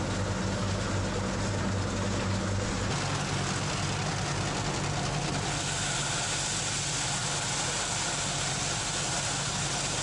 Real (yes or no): yes